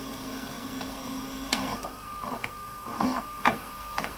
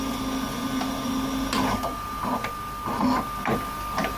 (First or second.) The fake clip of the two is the first